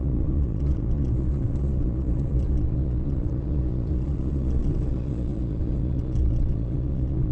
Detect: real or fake fake